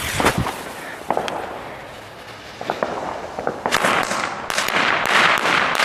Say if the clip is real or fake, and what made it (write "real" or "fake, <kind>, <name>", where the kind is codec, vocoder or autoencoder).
real